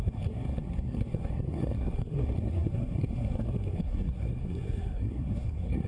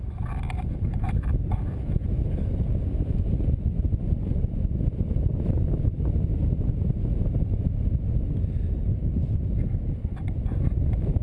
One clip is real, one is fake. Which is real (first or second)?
second